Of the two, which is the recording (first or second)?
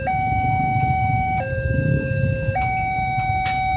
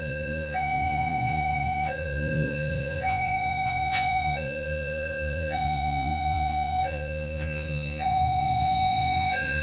first